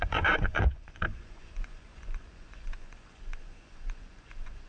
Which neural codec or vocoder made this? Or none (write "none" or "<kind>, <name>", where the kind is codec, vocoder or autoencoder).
vocoder, Vocos